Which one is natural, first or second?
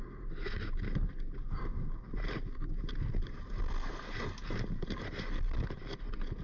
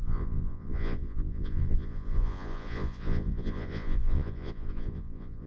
first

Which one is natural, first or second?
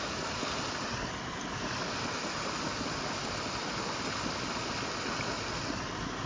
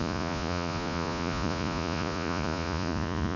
first